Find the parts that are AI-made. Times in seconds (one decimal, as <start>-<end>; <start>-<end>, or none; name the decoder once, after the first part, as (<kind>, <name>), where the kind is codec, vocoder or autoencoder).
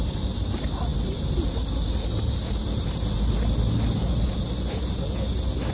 none